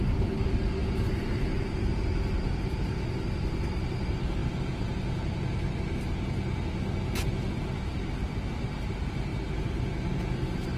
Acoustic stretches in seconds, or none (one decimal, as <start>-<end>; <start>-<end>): 0.0-10.8